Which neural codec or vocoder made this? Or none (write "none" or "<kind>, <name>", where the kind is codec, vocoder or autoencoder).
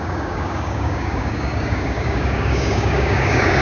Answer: codec, DAC